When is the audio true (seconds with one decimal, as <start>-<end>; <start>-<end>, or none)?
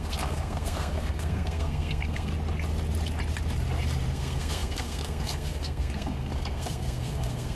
2.3-4.1